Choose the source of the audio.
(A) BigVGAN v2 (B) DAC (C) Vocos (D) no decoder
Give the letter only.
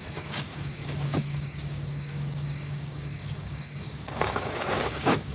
B